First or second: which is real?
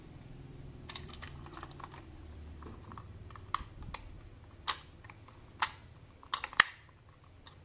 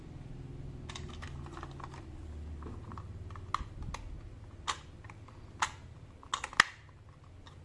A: second